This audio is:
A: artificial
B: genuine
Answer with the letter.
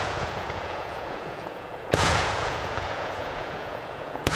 A